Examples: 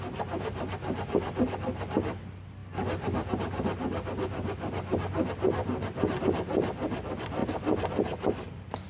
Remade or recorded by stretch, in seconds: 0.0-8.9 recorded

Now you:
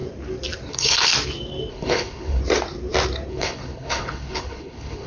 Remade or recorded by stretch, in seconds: 0.0-0.7 recorded; 0.7-1.1 remade; 1.1-1.7 recorded; 1.7-2.4 remade; 2.4-3.3 recorded; 3.3-5.1 remade

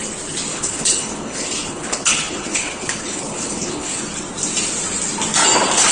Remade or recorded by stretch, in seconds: 0.0-0.5 recorded; 0.5-4.0 remade; 4.0-5.9 recorded

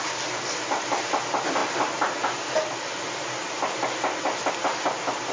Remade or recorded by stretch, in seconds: 0.0-5.3 recorded